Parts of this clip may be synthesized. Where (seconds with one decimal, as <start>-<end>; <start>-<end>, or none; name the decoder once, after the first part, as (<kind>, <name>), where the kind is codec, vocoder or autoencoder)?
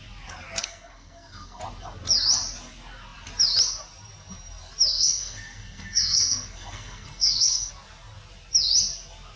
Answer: 0.6-1.6 (codec, SNAC); 4.9-7.7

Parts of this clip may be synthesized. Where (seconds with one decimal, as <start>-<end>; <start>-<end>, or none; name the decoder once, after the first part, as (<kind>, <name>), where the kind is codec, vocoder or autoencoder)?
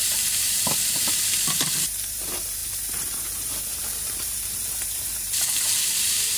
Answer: 0.0-6.4 (vocoder, BigVGAN v2)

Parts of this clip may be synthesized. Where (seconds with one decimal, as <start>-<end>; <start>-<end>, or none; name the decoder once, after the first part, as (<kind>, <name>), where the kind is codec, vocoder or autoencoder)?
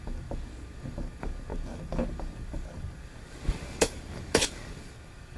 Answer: 0.0-5.4 (codec, DAC)